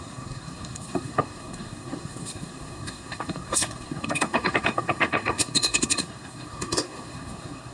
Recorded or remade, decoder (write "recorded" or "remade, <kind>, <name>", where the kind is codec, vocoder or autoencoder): remade, codec, SNAC